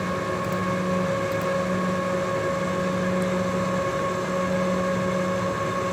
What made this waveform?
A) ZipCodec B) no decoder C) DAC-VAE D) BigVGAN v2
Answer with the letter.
B